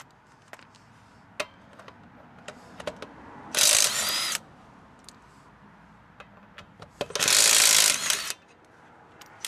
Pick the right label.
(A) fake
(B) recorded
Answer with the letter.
B